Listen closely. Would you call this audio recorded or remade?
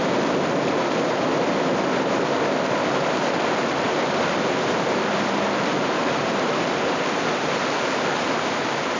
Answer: remade